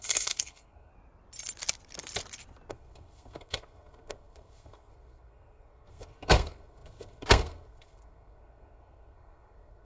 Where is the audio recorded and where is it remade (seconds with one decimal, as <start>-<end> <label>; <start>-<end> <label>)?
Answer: 0.0-0.9 remade; 0.9-2.7 recorded; 2.7-9.8 remade